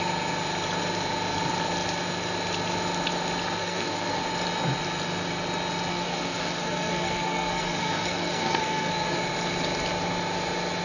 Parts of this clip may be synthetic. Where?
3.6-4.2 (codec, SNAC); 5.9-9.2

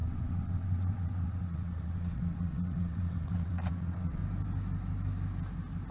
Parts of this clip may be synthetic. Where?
0.0-4.2 (vocoder, WaveNeXt)

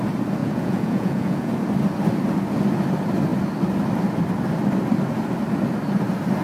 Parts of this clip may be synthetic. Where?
0.4-1.5 (vocoder, Vocos)

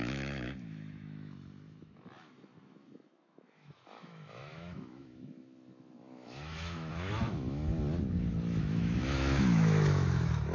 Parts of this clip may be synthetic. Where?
0.0-7.7 (autoencoder, DAC-VAE); 8.6-10.5